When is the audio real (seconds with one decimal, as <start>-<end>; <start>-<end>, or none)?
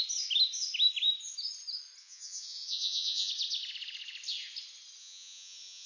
0.0-2.0; 3.3-5.0